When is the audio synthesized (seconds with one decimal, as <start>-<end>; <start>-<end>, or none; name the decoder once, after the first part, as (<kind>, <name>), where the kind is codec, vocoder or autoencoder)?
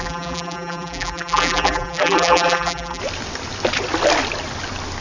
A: 0.0-3.0 (vocoder, BigVGAN v2)